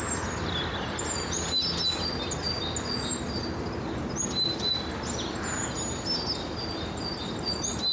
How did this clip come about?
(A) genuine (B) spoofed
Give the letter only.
A